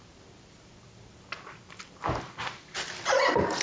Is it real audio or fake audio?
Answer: real